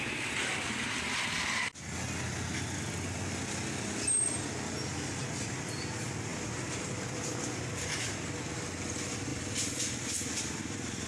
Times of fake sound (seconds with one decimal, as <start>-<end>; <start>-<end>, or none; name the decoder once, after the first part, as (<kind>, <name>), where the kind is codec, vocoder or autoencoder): 6.3-7.4 (vocoder, BigVGAN v2); 9.3-10.6